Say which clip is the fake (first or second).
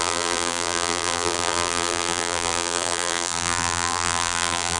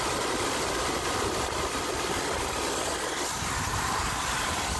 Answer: first